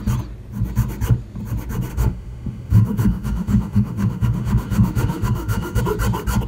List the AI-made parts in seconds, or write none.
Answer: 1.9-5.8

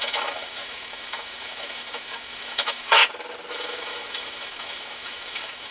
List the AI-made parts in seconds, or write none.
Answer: 0.0-3.0; 3.5-5.7